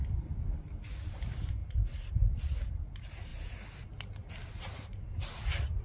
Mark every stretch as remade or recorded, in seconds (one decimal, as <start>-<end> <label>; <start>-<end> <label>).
0.0-5.8 recorded